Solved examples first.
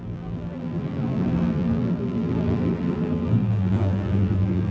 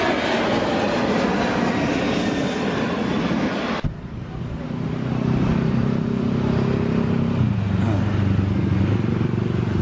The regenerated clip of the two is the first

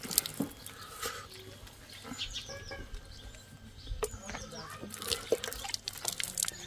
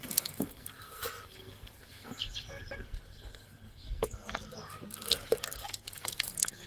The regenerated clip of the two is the second